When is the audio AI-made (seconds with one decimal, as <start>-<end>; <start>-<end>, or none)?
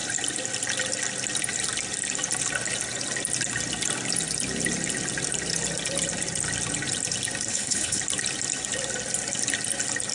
7.5-8.0